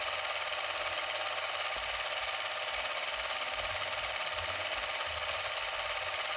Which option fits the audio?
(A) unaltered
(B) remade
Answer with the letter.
A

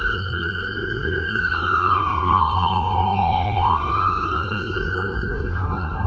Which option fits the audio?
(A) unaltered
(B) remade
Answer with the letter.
B